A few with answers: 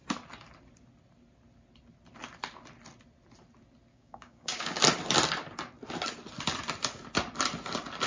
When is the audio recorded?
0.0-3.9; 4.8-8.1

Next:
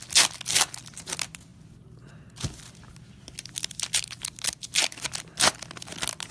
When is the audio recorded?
0.0-6.3

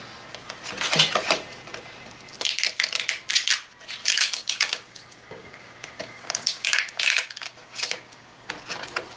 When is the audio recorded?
0.0-4.0; 8.5-9.2

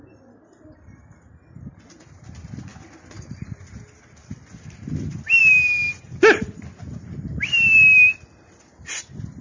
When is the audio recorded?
0.0-9.4

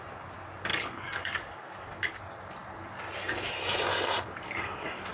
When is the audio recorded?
0.0-0.7; 2.2-5.1

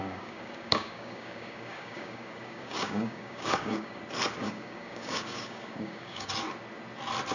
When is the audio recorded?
4.0-4.4; 6.3-7.3